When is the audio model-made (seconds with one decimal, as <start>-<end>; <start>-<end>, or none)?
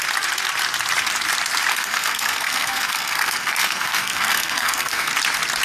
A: 1.7-5.1